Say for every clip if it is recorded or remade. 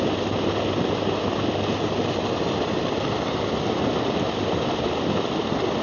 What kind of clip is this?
recorded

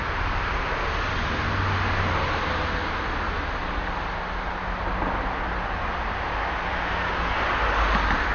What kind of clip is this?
recorded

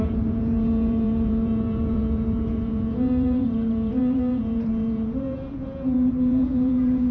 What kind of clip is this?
remade